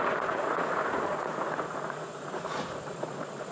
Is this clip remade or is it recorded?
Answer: remade